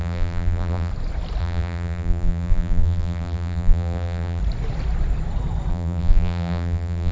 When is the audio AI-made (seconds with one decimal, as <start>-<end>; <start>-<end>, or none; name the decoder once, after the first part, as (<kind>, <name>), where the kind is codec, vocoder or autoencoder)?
0.0-0.9 (vocoder, BigVGAN v2); 1.4-4.4; 5.7-7.1